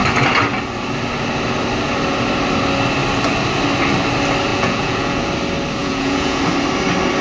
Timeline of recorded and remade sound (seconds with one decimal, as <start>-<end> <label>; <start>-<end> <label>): 0.0-4.5 recorded; 4.5-5.2 remade; 5.2-5.8 recorded; 5.8-6.4 remade; 6.4-7.2 recorded